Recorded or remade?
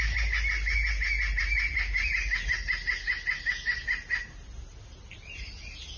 recorded